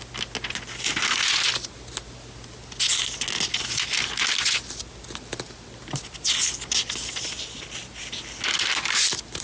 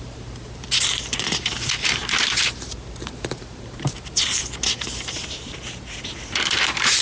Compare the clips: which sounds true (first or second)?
first